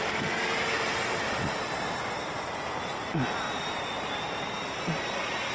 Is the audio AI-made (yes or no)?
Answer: no